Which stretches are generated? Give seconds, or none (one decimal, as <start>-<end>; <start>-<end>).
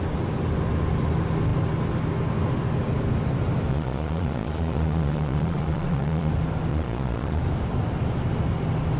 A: 3.7-6.3; 6.7-7.4